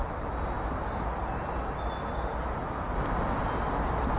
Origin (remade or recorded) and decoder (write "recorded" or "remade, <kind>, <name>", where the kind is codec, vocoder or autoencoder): recorded